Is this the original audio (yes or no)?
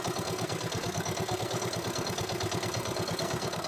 no